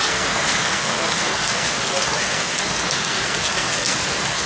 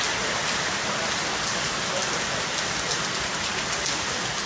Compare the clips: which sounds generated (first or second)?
first